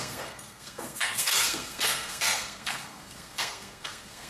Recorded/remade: remade